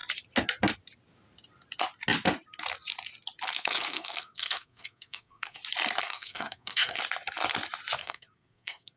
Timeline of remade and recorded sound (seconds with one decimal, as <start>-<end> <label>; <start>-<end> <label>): 0.0-3.5 recorded; 3.5-5.6 remade; 5.6-6.0 recorded; 6.0-7.0 remade; 7.0-8.0 recorded; 8.0-9.0 remade